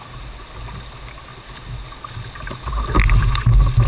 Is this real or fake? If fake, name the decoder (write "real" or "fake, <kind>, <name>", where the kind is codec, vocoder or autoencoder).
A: real